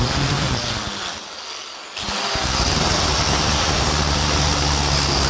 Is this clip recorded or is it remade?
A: recorded